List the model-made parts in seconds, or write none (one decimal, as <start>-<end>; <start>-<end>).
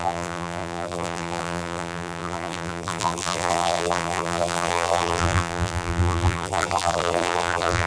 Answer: 0.0-7.9